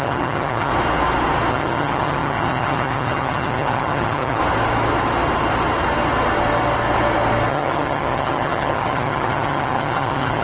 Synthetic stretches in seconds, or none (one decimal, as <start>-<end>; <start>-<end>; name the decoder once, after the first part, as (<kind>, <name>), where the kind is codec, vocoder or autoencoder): 0.0-0.7 (vocoder, HiFi-GAN); 1.5-4.4; 7.5-10.4